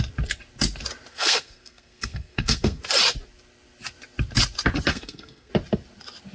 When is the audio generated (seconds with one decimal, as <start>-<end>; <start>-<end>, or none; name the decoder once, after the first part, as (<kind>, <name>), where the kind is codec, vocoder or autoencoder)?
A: 1.1-2.8 (codec, SNAC); 4.9-5.5